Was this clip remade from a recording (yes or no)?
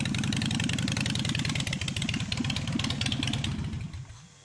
no